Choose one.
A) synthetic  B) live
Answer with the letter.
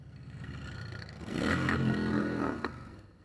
A